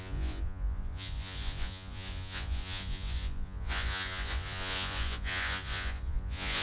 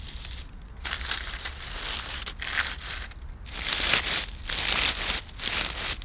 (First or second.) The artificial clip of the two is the first